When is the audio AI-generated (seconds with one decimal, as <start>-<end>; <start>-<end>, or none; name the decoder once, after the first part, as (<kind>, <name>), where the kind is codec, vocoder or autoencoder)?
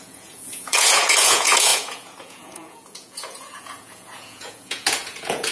0.0-5.5 (vocoder, Vocos)